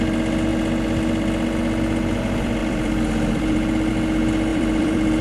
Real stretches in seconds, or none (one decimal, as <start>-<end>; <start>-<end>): 0.0-2.6; 3.9-4.5